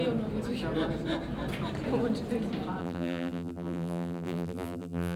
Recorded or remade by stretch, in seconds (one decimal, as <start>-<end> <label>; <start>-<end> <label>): 0.0-2.8 recorded; 2.8-5.2 remade

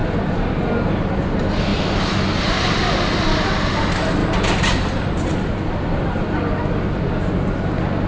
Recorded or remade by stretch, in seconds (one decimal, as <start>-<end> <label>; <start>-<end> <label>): 0.0-0.5 remade; 0.5-1.7 recorded; 1.7-2.8 remade; 2.8-4.2 recorded; 4.2-6.0 remade; 6.0-8.1 recorded

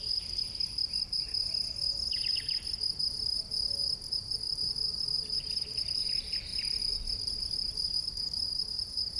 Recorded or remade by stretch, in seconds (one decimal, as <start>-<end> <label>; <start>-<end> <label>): 0.0-3.8 recorded; 3.8-6.1 remade; 6.1-6.5 recorded; 6.5-7.4 remade; 7.4-9.2 recorded

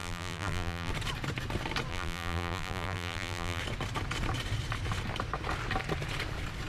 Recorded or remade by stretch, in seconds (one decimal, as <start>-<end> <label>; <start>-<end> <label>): 0.0-0.9 remade; 0.9-1.9 recorded; 1.9-3.6 remade; 3.6-6.7 recorded

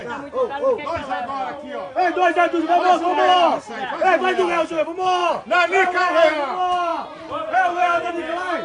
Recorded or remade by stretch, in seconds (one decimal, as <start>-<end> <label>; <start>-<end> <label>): 0.0-3.1 recorded; 3.1-3.9 remade; 3.9-5.2 recorded; 5.2-6.3 remade; 6.3-6.9 recorded; 6.9-8.1 remade; 8.1-8.6 recorded

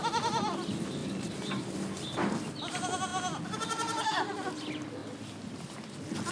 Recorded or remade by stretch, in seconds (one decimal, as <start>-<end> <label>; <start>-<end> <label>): 0.0-1.0 recorded; 1.0-2.4 remade; 2.4-6.3 recorded